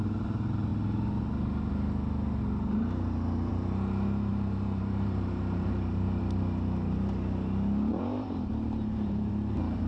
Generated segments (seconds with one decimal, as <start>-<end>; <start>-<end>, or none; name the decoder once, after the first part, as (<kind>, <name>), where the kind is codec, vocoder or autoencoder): 4.3-6.2 (vocoder, BigVGAN v2); 7.9-9.3